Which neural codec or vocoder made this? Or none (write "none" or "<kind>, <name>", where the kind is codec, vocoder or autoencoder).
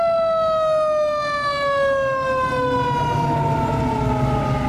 none